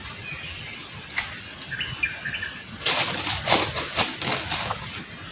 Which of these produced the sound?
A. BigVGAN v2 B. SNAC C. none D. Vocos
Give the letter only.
C